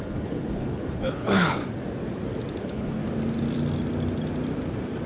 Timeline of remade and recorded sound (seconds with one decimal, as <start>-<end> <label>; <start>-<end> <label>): 0.0-1.6 remade; 1.6-2.6 recorded; 2.6-3.0 remade; 3.0-5.1 recorded